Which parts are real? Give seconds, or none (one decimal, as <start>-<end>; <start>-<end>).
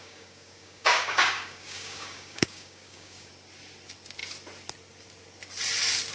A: 3.3-6.1